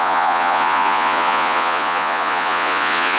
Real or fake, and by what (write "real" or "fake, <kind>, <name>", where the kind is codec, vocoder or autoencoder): fake, vocoder, Vocos